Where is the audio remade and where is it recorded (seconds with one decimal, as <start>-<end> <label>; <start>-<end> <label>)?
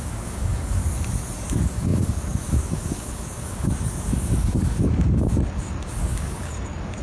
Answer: 0.0-0.8 remade; 0.8-1.5 recorded; 1.5-7.0 remade